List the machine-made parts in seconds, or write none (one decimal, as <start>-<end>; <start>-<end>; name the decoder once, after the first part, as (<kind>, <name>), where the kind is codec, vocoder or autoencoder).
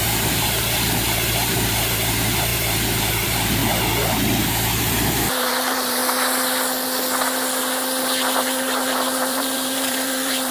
0.0-3.6 (vocoder, BigVGAN v2); 4.8-6.0; 8.0-10.5